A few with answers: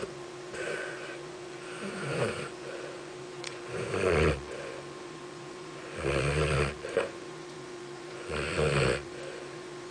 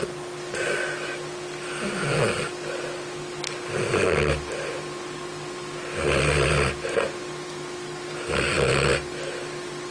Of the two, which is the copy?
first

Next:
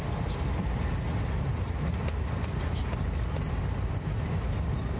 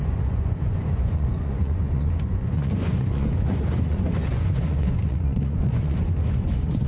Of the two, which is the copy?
second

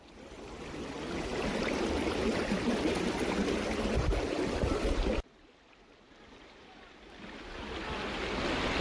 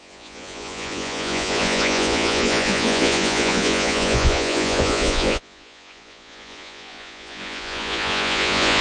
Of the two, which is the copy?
second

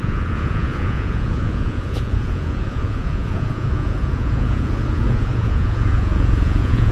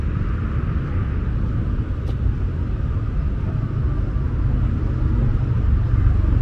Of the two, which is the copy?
first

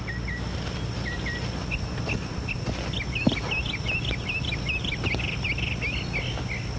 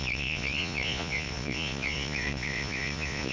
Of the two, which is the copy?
second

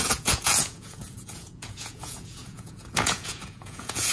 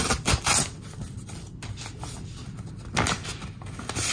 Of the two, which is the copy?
first